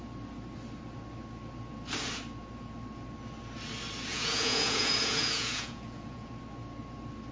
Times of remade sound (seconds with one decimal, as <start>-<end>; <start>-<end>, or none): 4.1-6.3